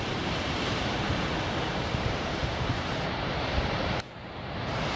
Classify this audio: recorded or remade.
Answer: remade